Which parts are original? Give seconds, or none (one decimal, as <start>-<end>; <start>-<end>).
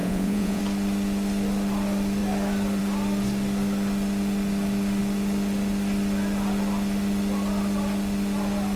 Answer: 0.6-8.8